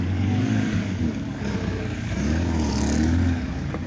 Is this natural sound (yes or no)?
no